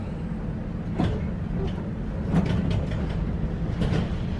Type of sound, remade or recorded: recorded